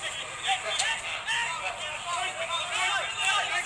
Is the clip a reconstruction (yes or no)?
no